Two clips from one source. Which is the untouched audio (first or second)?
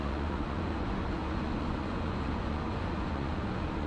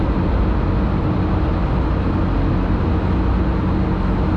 second